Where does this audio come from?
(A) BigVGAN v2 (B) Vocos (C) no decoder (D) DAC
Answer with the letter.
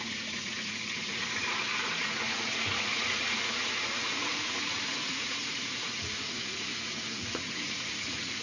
B